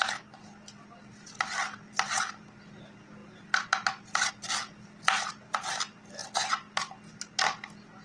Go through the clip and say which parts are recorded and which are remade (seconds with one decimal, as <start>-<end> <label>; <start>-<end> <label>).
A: 0.0-8.0 recorded